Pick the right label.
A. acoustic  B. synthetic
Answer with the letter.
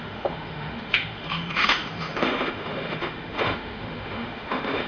B